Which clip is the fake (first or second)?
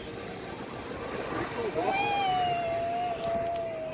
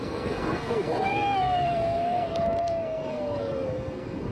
second